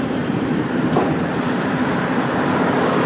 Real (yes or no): no